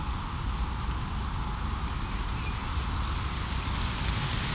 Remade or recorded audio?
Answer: recorded